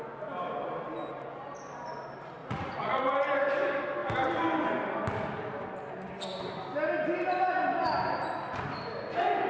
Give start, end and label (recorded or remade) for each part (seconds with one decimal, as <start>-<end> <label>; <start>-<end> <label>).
0.0-2.4 recorded; 2.4-3.0 remade; 3.0-9.5 recorded